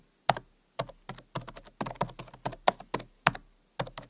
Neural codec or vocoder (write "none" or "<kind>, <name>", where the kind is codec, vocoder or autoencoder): none